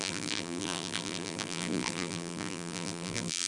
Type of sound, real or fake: fake